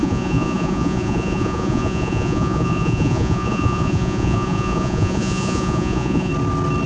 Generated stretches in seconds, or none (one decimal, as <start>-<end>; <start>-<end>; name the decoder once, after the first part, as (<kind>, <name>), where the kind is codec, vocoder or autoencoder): 0.0-6.3 (vocoder, Vocos)